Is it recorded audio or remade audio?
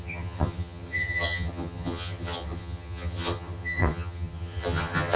remade